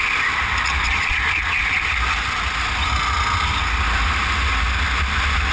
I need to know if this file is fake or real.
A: real